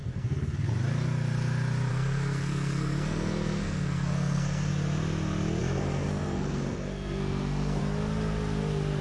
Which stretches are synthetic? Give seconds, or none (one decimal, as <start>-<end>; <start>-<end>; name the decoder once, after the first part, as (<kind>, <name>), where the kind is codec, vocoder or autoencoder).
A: 0.0-0.7 (codec, SNAC); 1.9-4.7; 5.6-7.8